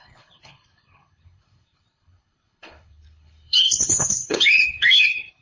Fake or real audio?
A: fake